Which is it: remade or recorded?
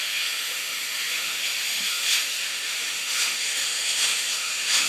remade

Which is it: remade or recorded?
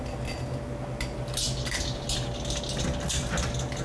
recorded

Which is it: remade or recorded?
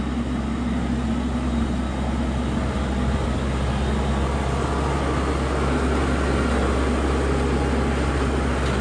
recorded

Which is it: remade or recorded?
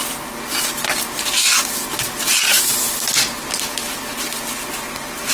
recorded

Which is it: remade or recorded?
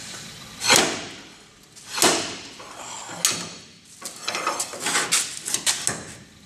recorded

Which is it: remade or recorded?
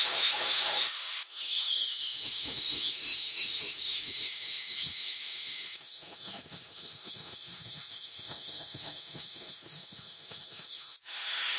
remade